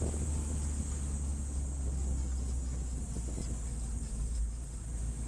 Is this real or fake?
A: real